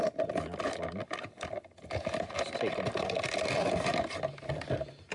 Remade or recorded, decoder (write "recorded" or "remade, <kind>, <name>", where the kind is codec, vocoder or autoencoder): recorded